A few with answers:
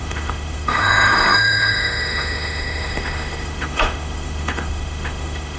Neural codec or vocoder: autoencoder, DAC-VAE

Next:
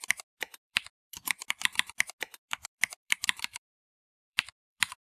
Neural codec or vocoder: vocoder, BigVGAN v2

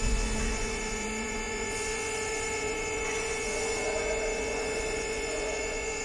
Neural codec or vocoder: vocoder, Vocos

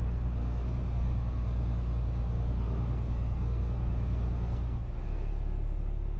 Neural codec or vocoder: codec, SNAC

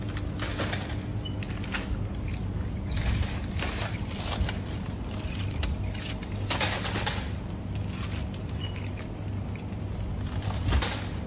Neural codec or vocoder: none